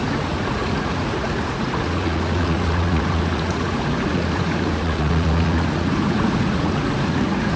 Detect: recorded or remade remade